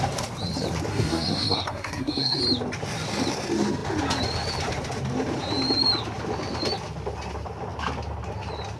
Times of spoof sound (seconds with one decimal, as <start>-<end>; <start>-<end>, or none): 0.9-2.4